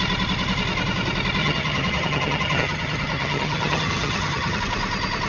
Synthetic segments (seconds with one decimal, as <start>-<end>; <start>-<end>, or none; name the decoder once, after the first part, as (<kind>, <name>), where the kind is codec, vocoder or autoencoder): 1.4-4.6 (vocoder, HiFi-GAN)